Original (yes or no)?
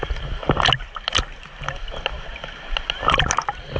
yes